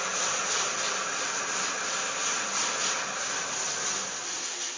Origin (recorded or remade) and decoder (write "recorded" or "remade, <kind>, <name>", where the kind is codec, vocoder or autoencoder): recorded